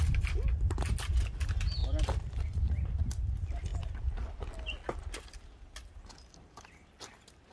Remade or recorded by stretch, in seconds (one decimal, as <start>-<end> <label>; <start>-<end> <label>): 0.0-0.8 remade; 0.8-1.8 recorded; 1.8-3.3 remade; 3.3-3.7 recorded; 3.7-4.4 remade; 4.4-7.5 recorded